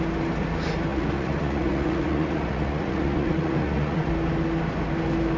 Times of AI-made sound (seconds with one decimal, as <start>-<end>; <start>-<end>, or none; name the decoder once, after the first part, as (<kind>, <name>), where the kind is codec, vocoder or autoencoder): 0.9-4.1 (vocoder, Vocos)